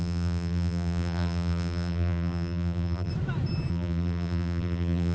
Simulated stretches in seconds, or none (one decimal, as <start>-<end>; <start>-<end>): 0.0-3.1; 3.7-5.1